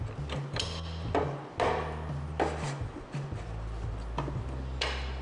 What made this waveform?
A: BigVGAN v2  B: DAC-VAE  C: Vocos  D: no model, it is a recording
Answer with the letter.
D